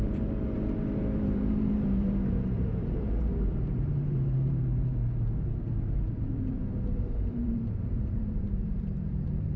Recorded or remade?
remade